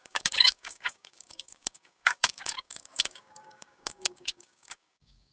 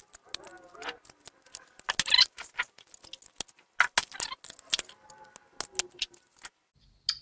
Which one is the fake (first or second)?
first